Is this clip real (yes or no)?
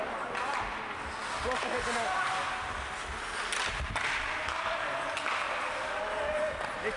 yes